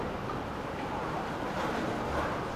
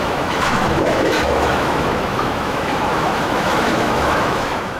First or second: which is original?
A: first